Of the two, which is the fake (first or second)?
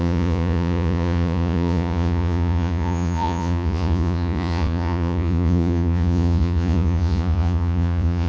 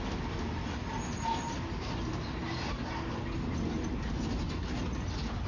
first